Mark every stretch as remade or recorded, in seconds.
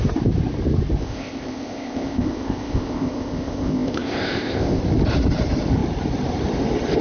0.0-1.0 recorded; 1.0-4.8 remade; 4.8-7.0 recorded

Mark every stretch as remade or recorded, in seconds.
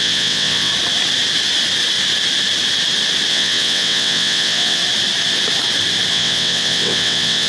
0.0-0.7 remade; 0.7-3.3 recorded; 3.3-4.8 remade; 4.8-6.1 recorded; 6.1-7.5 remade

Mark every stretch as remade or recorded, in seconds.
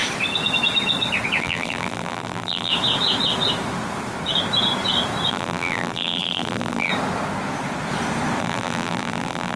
0.0-1.4 recorded; 1.4-2.7 remade; 2.7-5.3 recorded; 5.3-6.9 remade; 6.9-8.4 recorded; 8.4-9.6 remade